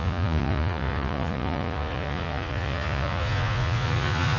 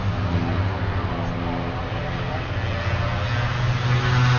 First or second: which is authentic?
second